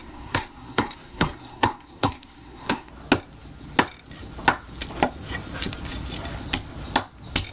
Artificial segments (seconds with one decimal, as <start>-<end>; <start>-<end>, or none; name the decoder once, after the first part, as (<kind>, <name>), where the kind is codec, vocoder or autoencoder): 0.0-2.9 (codec, SNAC)